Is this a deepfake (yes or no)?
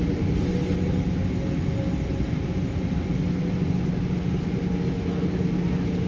no